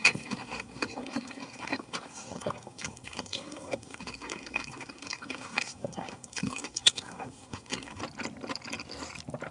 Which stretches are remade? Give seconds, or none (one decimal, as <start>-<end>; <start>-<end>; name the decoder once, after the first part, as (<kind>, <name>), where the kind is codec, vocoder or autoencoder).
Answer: 0.0-8.0 (codec, SNAC)